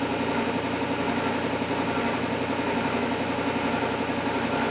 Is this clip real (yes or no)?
yes